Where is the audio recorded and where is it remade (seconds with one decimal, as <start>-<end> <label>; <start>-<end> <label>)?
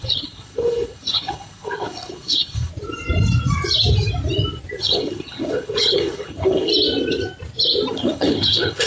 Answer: 0.0-2.7 remade; 2.7-4.8 recorded; 4.8-6.7 remade; 6.7-7.9 recorded; 7.9-8.9 remade